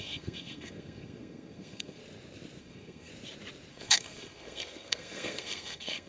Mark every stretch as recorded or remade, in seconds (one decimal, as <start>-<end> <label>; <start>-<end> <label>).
0.0-2.0 remade; 2.0-2.6 recorded; 2.6-3.1 remade; 3.1-3.7 recorded; 3.7-6.1 remade